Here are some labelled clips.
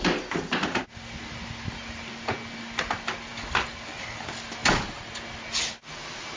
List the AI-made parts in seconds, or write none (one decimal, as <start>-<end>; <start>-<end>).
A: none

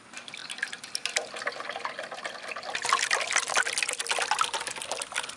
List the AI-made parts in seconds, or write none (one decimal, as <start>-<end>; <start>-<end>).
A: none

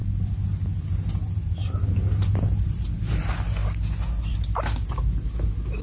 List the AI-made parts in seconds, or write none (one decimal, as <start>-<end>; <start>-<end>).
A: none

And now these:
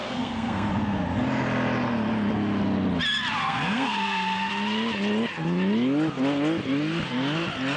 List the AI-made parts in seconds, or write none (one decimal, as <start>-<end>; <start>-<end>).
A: 0.0-0.7; 3.4-4.5

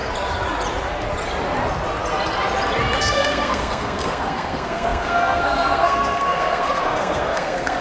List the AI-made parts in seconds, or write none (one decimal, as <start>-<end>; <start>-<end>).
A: 3.0-7.8

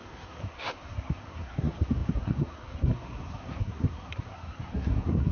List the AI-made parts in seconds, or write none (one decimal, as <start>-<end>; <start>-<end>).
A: 0.0-5.3

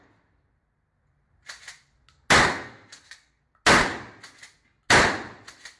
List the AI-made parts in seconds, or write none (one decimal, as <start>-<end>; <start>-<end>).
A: 2.5-3.4

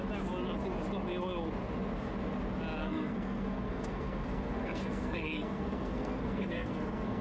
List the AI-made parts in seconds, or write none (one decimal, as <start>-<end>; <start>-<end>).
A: 2.8-7.2